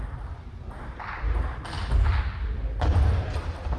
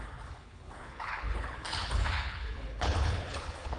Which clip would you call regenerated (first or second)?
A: second